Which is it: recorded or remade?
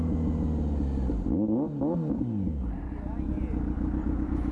recorded